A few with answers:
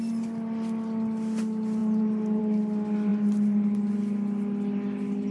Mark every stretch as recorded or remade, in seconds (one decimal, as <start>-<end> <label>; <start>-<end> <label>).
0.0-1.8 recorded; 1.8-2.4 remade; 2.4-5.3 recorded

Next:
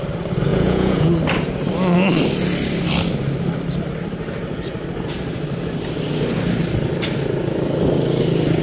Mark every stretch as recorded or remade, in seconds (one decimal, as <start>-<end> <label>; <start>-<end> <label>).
0.0-0.5 recorded; 0.5-1.1 remade; 1.1-8.6 recorded

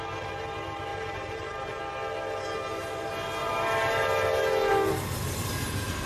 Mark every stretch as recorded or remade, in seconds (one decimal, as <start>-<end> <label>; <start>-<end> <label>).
0.0-0.9 recorded; 0.9-1.8 remade; 1.8-3.4 recorded; 3.4-4.7 remade; 4.7-6.1 recorded